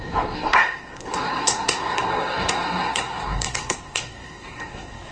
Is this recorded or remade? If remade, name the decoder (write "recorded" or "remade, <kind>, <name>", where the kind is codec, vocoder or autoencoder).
remade, codec, SNAC